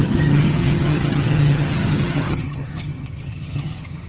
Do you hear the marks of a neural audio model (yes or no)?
yes